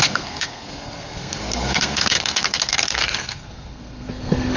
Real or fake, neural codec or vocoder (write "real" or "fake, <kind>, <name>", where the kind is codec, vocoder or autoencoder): fake, codec, SNAC